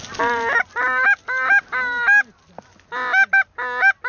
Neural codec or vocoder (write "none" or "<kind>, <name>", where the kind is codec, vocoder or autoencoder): none